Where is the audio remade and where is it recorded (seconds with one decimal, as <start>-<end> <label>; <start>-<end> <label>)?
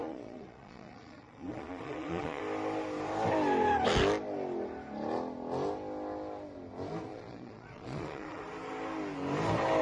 0.0-2.4 remade; 2.4-7.1 recorded; 7.1-8.4 remade; 8.4-9.8 recorded